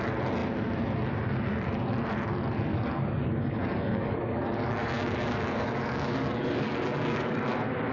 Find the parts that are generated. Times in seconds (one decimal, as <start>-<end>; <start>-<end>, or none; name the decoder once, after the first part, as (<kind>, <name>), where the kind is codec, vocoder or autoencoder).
2.7-7.4 (codec, DAC)